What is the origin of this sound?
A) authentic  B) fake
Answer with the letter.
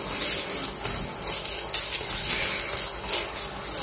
A